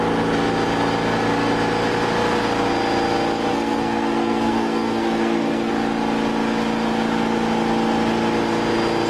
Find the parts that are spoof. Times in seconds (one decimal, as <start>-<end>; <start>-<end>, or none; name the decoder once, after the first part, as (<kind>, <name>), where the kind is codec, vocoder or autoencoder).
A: 3.5-5.7 (codec, SNAC)